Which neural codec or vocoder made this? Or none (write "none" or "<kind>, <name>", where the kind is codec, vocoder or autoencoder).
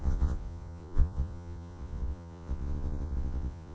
vocoder, Vocos